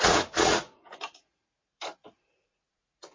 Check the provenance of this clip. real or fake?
fake